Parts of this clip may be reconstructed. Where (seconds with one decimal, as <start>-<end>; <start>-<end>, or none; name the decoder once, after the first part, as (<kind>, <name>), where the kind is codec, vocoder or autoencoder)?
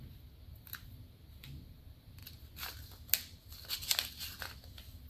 none